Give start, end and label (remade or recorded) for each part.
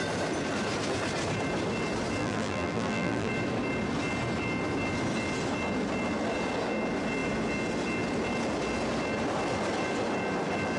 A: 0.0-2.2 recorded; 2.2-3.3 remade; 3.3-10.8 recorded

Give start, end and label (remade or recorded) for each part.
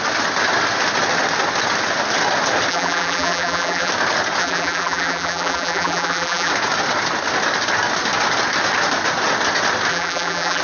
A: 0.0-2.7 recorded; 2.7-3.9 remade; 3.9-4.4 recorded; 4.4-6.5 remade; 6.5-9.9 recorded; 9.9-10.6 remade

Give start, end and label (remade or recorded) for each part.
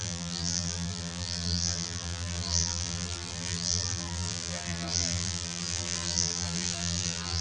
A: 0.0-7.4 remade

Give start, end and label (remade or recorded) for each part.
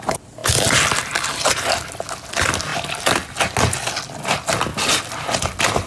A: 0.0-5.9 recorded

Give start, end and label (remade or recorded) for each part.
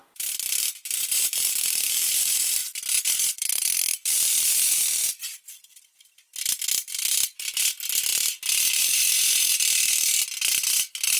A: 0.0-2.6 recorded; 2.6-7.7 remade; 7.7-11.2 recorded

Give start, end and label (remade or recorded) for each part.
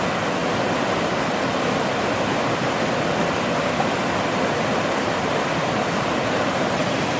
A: 0.0-7.2 recorded